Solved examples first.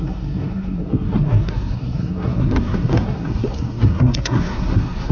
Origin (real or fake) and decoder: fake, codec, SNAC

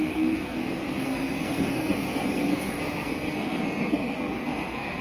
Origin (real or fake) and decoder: fake, codec, SNAC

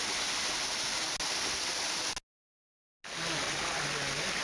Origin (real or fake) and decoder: real